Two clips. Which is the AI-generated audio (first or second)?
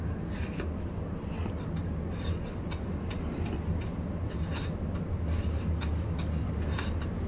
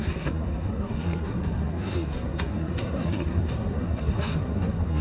second